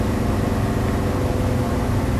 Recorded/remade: recorded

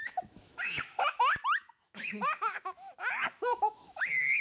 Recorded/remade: remade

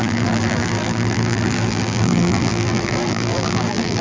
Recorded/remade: remade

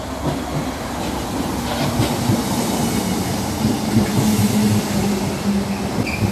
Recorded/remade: recorded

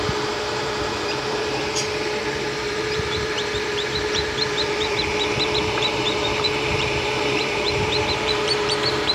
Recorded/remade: remade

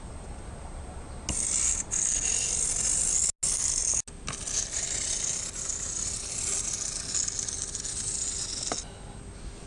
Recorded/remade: recorded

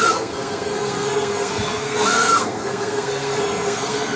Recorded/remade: remade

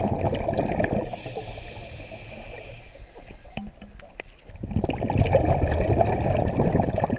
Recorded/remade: recorded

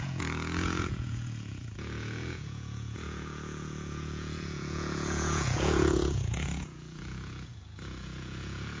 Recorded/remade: remade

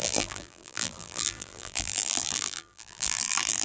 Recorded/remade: remade